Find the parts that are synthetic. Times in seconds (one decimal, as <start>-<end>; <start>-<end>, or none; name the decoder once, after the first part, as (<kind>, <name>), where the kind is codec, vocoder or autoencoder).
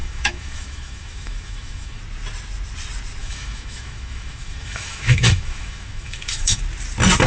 0.0-2.0 (autoencoder, DAC-VAE); 3.2-6.6